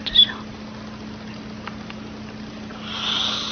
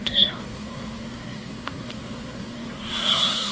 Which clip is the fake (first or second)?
second